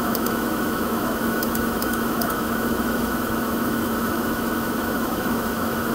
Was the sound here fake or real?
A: fake